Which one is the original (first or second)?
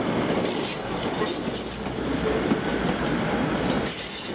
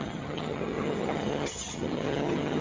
first